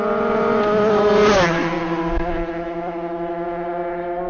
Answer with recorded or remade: recorded